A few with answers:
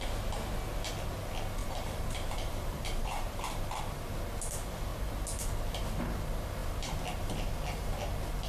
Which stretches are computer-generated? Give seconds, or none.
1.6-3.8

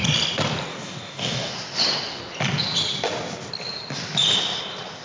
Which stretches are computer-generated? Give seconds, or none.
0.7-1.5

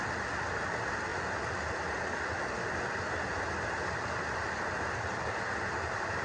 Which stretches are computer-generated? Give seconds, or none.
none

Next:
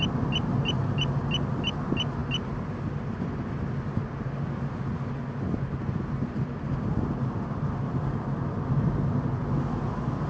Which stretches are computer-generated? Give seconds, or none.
none

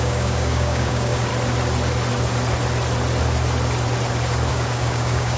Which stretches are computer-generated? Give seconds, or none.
0.0-1.3; 4.5-5.4

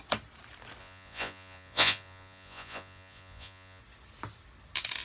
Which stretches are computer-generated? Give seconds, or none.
0.8-3.8